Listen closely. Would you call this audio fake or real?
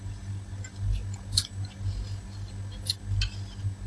real